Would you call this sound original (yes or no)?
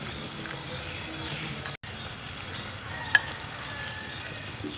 yes